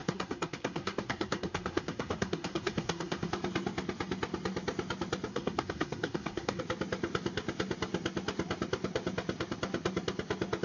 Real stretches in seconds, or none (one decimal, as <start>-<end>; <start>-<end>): 3.3-5.3; 6.6-10.6